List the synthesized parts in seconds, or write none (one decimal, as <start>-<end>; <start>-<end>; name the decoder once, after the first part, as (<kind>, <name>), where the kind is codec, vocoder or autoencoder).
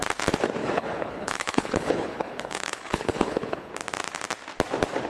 0.6-3.7 (codec, HILCodec)